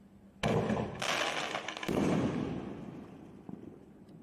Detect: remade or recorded recorded